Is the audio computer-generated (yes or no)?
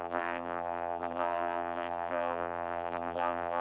yes